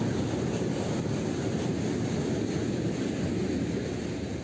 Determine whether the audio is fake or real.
real